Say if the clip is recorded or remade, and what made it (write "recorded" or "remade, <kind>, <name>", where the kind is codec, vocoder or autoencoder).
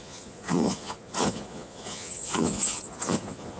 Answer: remade, vocoder, Vocos